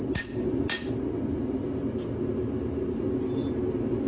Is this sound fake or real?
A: real